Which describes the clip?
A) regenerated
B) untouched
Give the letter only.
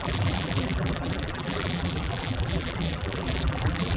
A